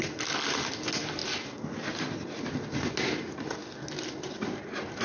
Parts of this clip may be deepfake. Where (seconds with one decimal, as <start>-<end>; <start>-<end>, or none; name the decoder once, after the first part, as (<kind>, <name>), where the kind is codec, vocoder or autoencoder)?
none